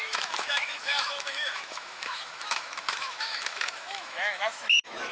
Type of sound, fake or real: fake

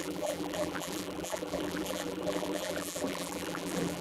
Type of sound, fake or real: fake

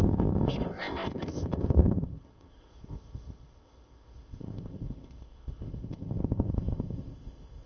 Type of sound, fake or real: fake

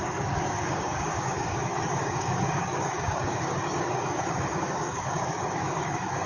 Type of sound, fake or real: fake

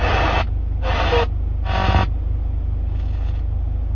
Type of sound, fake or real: real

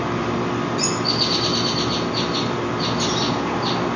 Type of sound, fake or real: real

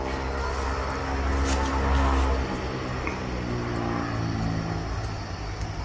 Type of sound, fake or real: real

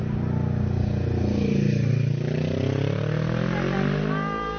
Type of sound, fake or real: real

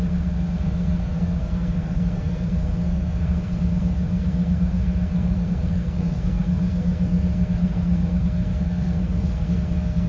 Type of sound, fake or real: fake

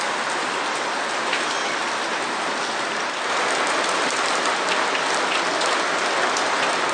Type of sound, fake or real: real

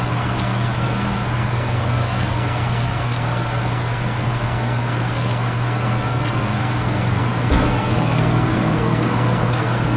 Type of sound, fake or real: fake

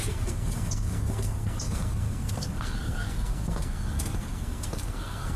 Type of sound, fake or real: fake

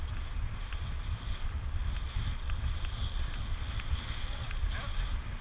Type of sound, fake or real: real